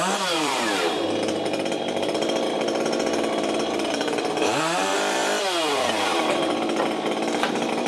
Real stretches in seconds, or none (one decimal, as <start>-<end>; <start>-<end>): 4.9-7.4